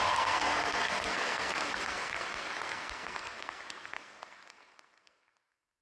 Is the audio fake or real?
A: fake